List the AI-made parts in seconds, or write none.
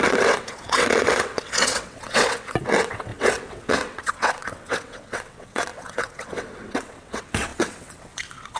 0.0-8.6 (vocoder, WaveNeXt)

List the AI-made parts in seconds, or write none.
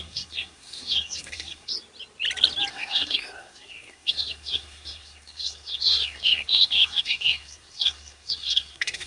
0.0-1.7 (codec, SNAC); 2.7-9.1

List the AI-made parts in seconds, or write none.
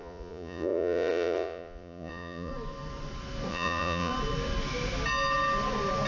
0.0-2.5 (vocoder, Vocos); 3.5-4.1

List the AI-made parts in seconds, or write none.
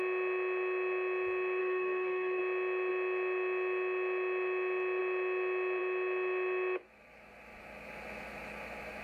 1.6-2.4 (codec, SNAC)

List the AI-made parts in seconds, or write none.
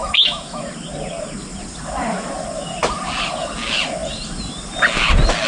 0.0-0.7 (autoencoder, DAC-VAE)